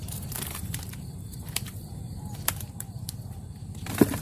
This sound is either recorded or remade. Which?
remade